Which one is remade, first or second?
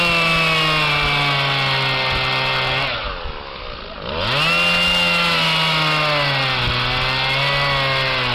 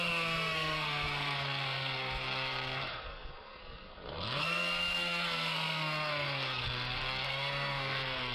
second